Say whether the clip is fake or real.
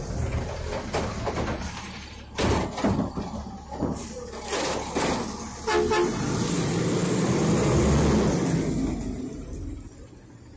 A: real